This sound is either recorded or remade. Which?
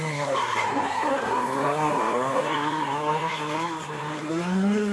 remade